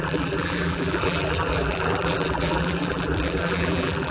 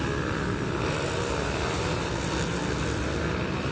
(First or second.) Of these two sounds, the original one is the second